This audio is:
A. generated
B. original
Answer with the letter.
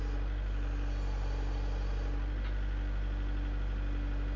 B